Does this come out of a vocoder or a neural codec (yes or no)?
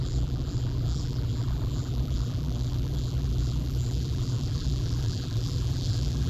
yes